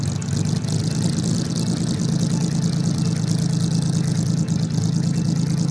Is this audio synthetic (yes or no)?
no